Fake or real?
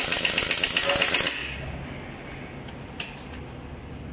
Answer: real